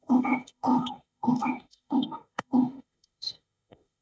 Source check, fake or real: fake